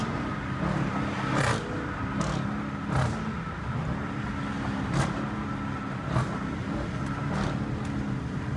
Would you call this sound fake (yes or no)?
no